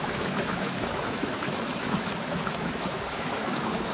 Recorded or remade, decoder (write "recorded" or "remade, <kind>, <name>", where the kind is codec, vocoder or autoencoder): remade, autoencoder, DAC-VAE